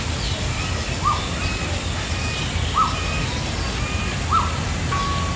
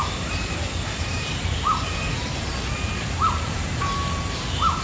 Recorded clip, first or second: first